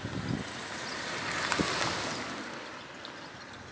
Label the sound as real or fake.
real